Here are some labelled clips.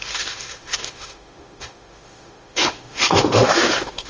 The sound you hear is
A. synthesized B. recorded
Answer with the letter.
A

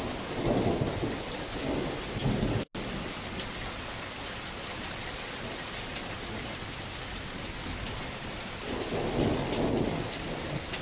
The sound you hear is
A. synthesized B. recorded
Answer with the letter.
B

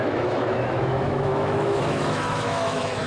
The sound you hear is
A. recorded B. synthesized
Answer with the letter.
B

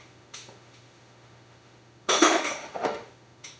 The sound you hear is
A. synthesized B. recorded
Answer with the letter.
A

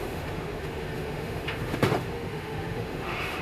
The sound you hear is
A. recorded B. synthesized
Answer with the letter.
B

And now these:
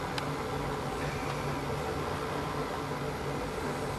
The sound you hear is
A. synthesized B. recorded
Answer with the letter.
B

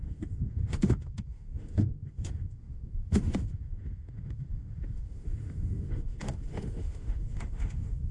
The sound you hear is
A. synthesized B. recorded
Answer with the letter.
A